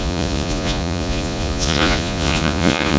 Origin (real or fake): fake